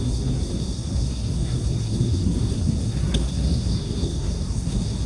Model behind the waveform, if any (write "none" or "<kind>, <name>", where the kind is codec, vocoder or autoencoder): codec, SNAC